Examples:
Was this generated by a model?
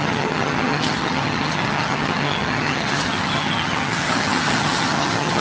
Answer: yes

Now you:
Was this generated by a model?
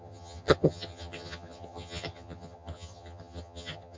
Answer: yes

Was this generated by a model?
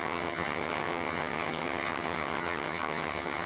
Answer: yes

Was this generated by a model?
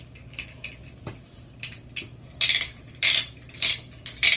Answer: no